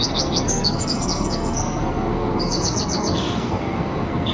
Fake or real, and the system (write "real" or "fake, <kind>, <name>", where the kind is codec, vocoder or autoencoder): fake, codec, SNAC